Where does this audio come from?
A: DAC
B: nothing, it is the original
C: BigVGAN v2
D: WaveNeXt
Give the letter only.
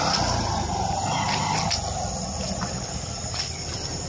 B